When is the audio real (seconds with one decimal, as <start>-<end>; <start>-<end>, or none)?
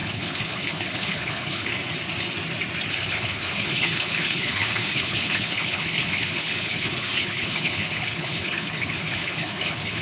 1.7-2.9